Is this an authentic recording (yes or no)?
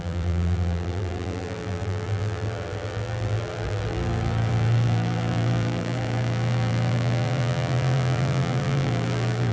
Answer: no